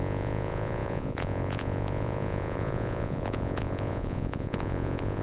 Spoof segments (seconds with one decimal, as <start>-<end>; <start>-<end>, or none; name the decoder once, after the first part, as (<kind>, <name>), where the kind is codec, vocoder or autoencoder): 0.0-5.2 (vocoder, Vocos)